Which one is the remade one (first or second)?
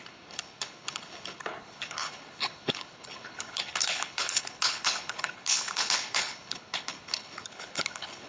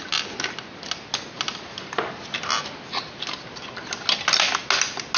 first